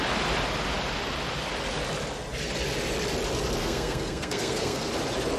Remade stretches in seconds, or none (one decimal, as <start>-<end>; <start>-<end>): 3.6-4.9